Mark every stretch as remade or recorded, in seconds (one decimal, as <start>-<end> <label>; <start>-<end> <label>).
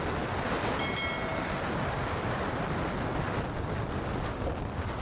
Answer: 0.0-5.0 recorded